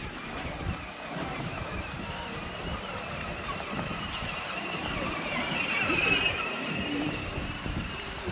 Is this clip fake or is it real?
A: fake